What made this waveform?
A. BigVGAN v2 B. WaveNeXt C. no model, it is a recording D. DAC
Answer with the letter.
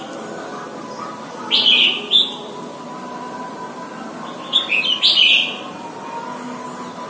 C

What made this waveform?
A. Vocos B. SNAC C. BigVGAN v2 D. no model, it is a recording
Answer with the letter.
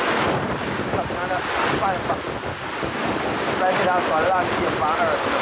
D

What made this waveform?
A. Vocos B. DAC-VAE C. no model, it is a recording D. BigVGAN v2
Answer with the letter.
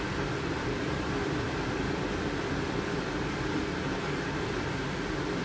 D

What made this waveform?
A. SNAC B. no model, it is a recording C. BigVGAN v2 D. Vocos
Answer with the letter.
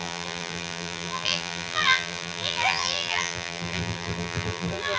C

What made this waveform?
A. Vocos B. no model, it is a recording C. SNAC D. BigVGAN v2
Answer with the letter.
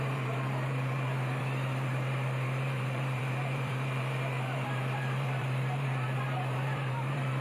D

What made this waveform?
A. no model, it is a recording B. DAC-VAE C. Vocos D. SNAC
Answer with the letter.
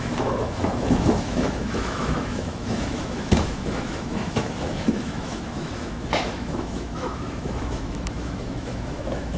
B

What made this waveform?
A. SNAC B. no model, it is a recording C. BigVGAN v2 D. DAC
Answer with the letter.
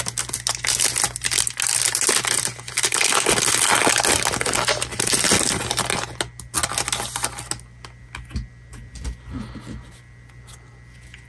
B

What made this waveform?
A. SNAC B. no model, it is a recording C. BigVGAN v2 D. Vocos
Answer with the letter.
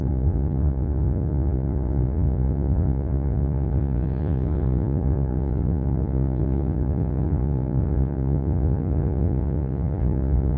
D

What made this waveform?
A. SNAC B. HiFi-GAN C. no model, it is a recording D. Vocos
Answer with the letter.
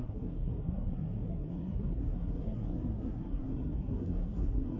A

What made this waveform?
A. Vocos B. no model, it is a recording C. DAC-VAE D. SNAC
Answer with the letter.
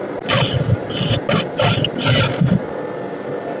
B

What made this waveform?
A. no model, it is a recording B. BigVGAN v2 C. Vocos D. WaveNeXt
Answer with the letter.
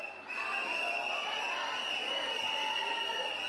A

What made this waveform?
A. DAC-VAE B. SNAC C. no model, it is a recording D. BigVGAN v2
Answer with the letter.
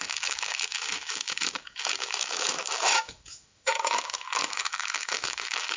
A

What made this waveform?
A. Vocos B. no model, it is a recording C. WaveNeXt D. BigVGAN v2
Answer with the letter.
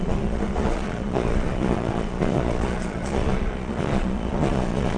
A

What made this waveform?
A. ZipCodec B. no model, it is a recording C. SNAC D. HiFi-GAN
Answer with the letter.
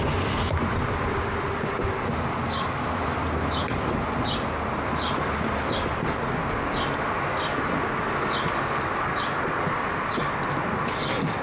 B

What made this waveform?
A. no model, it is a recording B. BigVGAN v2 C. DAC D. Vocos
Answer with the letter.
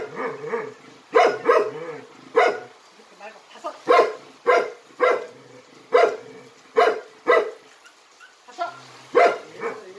A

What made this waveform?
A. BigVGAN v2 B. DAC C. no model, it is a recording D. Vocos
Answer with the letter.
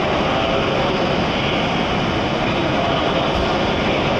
C